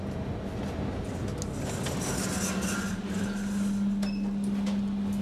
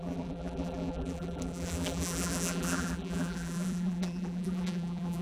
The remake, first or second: second